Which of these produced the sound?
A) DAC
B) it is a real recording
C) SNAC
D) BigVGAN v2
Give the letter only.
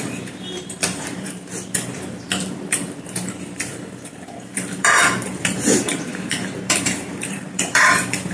D